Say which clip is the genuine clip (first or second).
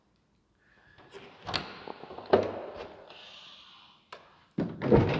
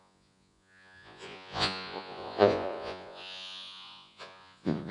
first